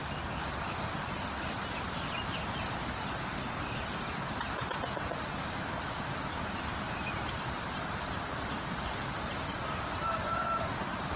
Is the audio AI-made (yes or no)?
no